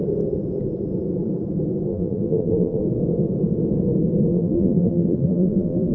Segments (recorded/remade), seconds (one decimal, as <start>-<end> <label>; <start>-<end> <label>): 0.0-1.9 recorded; 1.9-2.8 remade; 2.8-4.3 recorded; 4.3-5.9 remade

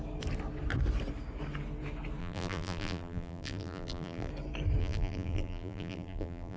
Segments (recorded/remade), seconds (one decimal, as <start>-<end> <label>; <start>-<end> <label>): 0.0-2.2 recorded; 2.2-4.3 remade; 4.3-4.8 recorded; 4.8-6.6 remade